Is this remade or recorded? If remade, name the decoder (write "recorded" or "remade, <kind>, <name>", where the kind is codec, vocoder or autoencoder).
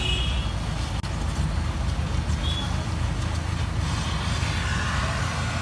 recorded